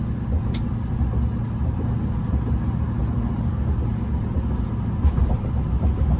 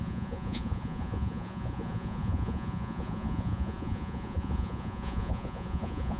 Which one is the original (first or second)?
first